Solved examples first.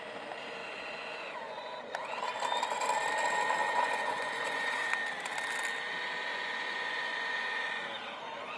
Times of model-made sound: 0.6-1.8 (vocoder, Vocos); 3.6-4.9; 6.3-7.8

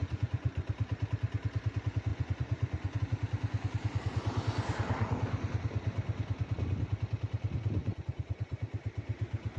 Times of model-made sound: 0.0-0.7 (vocoder, Vocos); 2.1-3.0; 7.8-8.6